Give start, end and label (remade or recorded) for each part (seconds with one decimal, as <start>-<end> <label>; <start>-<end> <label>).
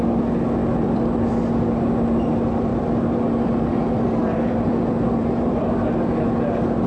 0.0-0.6 recorded; 0.6-1.3 remade; 1.3-2.7 recorded; 2.7-5.6 remade; 5.6-6.9 recorded